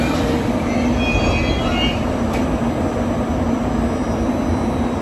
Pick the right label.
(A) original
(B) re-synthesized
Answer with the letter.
A